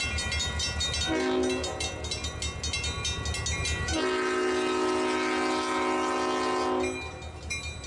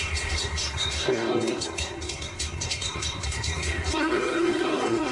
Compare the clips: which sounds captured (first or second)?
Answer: first